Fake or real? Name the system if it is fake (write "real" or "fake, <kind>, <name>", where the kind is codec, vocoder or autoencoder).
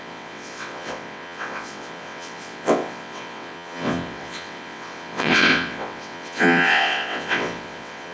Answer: fake, vocoder, WaveNeXt